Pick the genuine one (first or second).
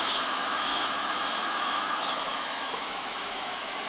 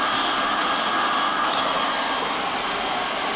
second